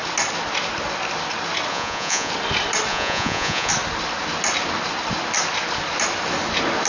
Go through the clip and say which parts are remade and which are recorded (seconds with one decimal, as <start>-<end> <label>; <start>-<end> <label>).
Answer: 0.0-1.7 recorded; 1.7-2.3 remade; 2.3-2.9 recorded; 2.9-3.7 remade; 3.7-6.9 recorded